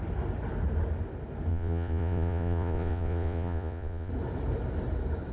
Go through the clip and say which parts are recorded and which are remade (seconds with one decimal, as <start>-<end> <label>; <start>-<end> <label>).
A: 0.0-1.5 recorded; 1.5-4.1 remade; 4.1-5.3 recorded